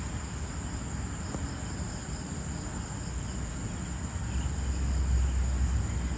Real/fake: real